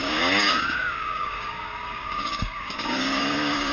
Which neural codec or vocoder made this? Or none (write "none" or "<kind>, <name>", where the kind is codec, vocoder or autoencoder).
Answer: codec, DAC